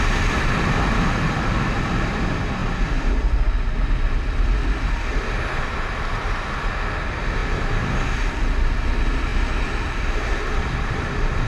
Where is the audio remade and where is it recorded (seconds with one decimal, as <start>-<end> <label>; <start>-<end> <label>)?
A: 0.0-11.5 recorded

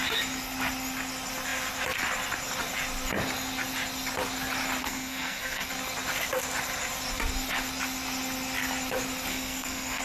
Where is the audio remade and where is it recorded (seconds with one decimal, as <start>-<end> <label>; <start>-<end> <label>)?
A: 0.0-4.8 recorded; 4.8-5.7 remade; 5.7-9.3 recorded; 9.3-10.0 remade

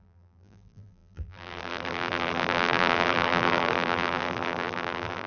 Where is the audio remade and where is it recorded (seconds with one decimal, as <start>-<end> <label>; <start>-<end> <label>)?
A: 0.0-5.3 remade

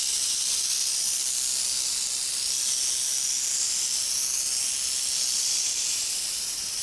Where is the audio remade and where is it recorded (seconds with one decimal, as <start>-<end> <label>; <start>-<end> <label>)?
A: 0.0-1.2 remade; 1.2-5.3 recorded; 5.3-6.8 remade

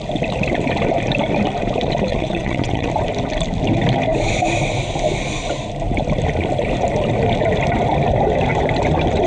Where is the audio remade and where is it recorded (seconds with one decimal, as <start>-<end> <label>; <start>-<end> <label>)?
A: 0.0-2.1 recorded; 2.1-2.9 remade; 2.9-9.3 recorded

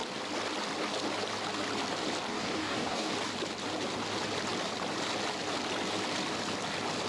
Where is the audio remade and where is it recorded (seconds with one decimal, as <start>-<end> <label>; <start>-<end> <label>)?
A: 0.0-2.3 recorded; 2.3-3.1 remade; 3.1-7.1 recorded